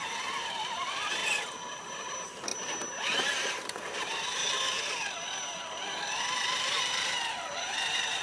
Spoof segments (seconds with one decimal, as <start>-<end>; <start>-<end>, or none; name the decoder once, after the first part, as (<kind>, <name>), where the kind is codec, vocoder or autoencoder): 0.0-1.2 (vocoder, BigVGAN v2); 1.8-4.4; 6.5-8.2